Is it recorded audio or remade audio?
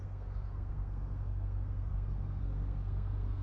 remade